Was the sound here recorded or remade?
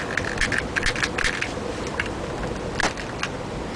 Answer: recorded